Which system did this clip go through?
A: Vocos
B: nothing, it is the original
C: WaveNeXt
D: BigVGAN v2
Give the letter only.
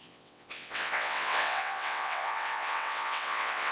C